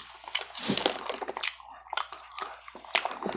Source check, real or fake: real